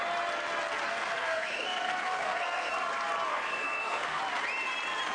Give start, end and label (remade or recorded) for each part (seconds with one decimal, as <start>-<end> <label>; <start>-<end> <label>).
0.0-0.9 recorded; 0.9-2.7 remade; 2.7-3.3 recorded; 3.3-4.2 remade; 4.2-5.1 recorded